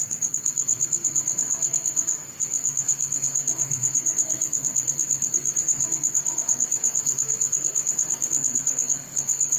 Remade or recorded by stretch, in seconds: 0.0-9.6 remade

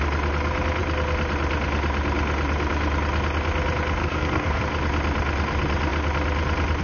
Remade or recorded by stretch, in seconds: 0.0-4.0 recorded; 4.0-4.6 remade; 4.6-6.8 recorded

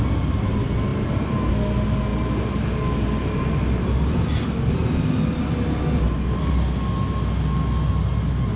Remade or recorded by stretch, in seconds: 0.0-8.6 recorded

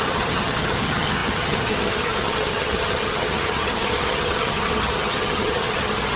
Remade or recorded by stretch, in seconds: 0.0-6.2 remade

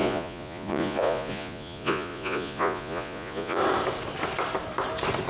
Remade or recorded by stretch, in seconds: 0.0-3.6 remade; 3.6-5.3 recorded

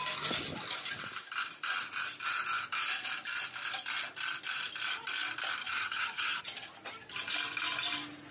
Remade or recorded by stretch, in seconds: 0.0-5.6 recorded; 5.6-6.4 remade; 6.4-8.3 recorded

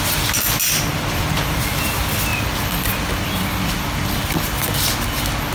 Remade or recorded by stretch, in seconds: 0.0-5.5 recorded

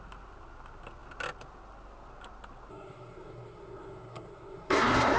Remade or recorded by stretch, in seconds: 0.0-2.7 recorded; 2.7-5.2 remade